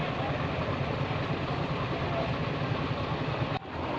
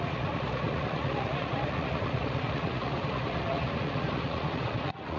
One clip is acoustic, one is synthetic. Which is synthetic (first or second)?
second